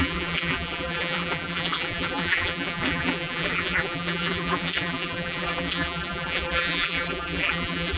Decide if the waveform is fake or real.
fake